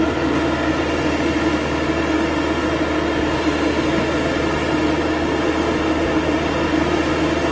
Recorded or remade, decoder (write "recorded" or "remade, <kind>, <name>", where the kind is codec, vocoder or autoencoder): recorded